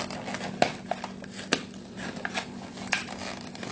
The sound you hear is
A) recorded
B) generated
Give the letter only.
A